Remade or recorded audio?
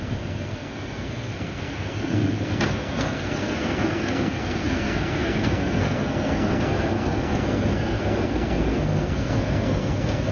remade